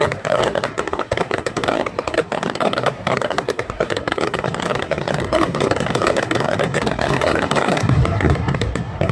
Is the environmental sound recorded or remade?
remade